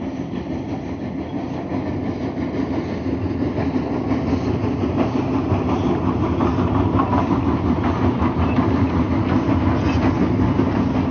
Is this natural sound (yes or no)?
yes